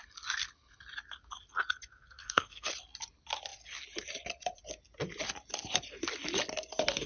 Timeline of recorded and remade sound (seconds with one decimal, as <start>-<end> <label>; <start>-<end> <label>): 0.0-2.0 recorded; 2.0-2.7 remade; 2.7-7.1 recorded